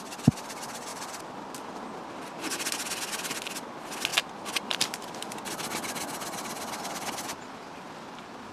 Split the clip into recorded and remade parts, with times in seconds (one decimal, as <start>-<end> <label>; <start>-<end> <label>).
0.0-0.9 recorded; 0.9-1.8 remade; 1.8-8.5 recorded